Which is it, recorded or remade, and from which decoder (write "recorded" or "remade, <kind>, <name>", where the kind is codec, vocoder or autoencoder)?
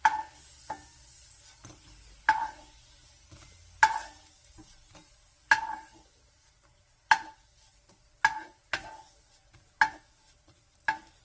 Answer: recorded